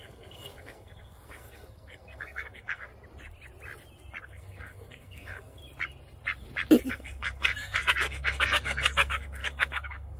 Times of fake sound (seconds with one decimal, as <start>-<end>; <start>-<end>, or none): 0.0-2.9; 4.2-5.6; 6.9-10.2